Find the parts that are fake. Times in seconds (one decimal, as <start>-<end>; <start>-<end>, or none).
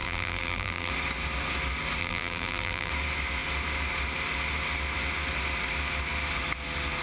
0.0-0.9; 2.0-2.9